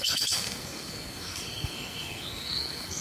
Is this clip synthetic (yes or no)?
yes